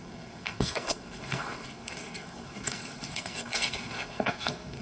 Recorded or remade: remade